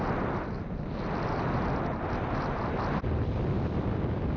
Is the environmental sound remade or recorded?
recorded